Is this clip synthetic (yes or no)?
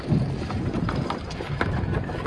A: no